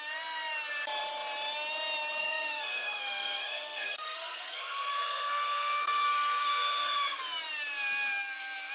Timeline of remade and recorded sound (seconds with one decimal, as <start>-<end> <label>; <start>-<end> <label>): 0.0-2.2 recorded; 2.2-7.2 remade; 7.2-8.7 recorded